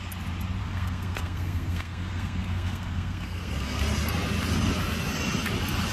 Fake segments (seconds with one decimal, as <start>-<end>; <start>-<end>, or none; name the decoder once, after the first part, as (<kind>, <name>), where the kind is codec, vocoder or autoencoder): 0.6-3.8 (codec, SNAC)